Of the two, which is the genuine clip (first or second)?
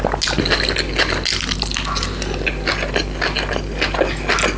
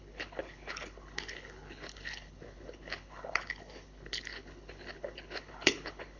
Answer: first